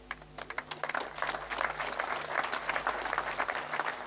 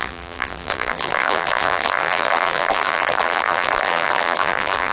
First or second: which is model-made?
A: second